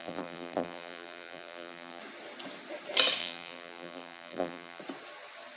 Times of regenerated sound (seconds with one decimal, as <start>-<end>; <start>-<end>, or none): 0.0-2.0; 3.2-4.8